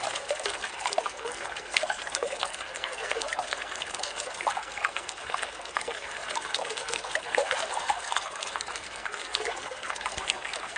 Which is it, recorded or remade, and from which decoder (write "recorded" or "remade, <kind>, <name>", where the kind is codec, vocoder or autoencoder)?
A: remade, codec, SNAC